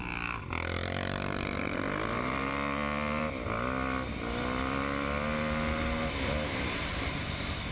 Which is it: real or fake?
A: real